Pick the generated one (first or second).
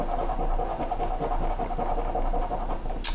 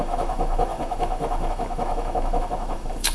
second